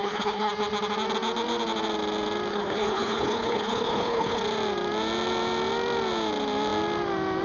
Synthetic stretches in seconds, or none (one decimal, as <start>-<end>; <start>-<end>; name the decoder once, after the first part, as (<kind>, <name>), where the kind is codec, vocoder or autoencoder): 0.0-0.5 (codec, HILCodec); 2.5-4.4